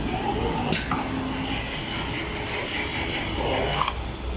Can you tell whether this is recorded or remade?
recorded